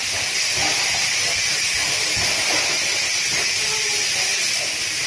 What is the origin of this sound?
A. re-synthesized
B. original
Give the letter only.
B